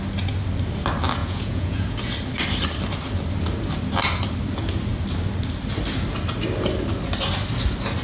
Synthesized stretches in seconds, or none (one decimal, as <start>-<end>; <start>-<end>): 1.2-2.0